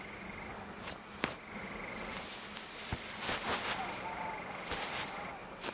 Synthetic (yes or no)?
no